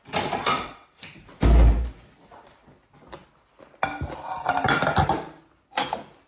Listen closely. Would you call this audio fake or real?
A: real